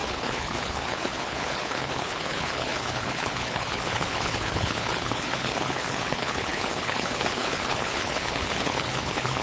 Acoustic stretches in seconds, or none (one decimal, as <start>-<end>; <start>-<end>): none